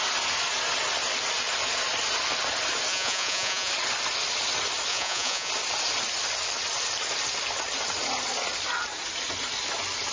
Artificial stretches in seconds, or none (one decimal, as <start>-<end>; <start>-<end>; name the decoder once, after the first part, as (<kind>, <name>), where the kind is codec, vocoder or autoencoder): 2.9-3.7 (vocoder, Vocos); 4.9-5.5